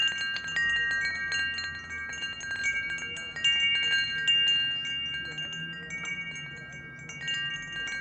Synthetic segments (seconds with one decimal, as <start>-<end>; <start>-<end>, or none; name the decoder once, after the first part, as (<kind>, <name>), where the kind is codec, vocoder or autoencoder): none